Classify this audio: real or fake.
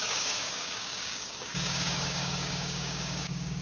fake